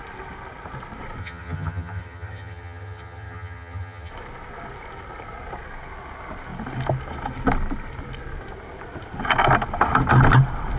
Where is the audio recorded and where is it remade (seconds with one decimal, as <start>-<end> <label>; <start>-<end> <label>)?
0.0-1.2 recorded; 1.2-4.1 remade; 4.1-10.8 recorded